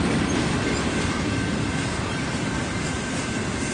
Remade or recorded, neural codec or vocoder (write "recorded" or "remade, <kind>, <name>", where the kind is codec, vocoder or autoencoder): recorded